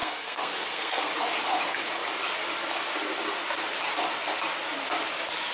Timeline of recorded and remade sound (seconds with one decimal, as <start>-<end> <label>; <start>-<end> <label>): 0.0-1.1 remade; 1.1-5.5 recorded